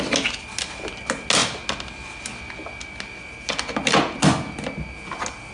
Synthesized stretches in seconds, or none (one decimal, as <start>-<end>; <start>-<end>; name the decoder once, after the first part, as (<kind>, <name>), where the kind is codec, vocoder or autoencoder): none